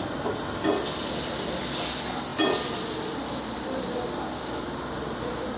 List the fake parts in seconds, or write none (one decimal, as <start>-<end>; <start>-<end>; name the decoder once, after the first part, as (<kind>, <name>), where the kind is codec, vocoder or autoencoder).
none